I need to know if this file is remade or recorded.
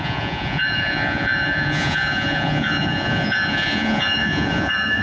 remade